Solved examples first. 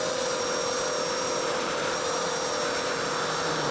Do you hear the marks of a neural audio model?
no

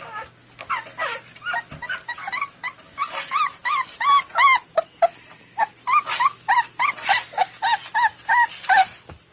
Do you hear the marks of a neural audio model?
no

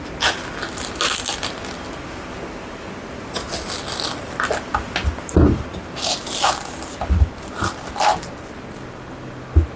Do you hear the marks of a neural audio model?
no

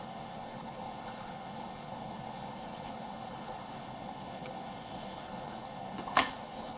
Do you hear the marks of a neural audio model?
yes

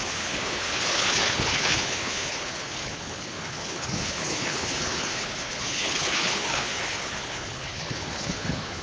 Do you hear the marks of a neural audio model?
yes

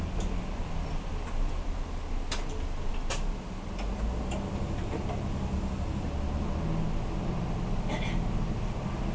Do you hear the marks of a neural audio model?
no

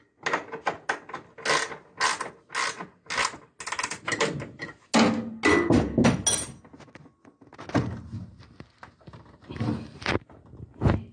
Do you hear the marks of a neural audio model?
no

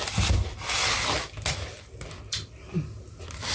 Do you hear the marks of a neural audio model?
no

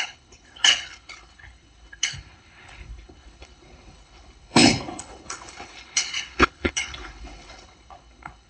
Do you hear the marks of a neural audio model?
yes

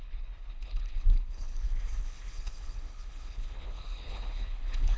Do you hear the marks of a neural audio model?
yes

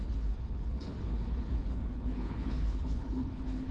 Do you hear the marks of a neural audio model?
yes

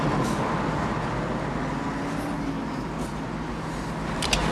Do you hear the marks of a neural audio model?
no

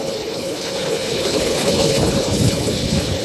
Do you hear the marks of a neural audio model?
yes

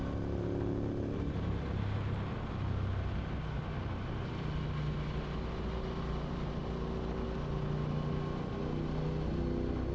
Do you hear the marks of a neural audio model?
no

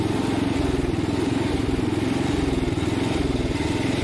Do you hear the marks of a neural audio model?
no